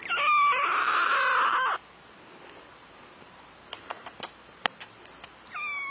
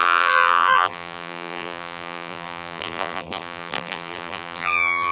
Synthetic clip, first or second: second